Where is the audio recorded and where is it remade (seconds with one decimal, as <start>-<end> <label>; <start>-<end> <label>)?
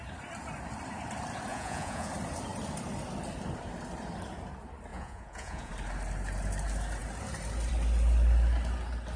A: 0.0-1.5 recorded; 1.5-2.1 remade; 2.1-4.9 recorded; 4.9-5.7 remade; 5.7-9.2 recorded